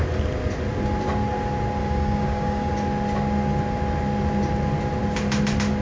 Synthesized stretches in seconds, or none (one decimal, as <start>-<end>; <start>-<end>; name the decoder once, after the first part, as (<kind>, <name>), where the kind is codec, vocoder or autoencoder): 1.8-2.7 (codec, DAC)